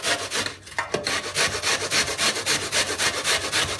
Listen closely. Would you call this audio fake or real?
real